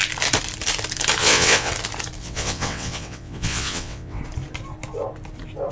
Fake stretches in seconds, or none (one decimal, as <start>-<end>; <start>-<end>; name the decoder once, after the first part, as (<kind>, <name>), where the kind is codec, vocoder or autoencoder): 1.2-1.7 (vocoder, WaveNeXt); 2.2-4.2